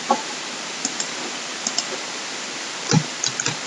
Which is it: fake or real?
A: real